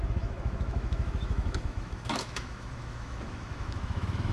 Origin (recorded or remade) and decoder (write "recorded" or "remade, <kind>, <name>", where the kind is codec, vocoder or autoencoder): remade, autoencoder, DAC-VAE